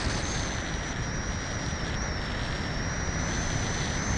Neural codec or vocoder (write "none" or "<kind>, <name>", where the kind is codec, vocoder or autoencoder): none